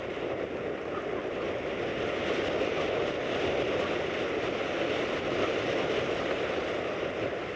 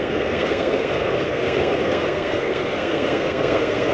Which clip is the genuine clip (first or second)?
first